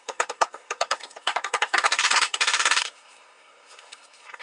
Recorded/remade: remade